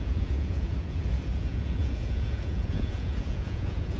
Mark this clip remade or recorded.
remade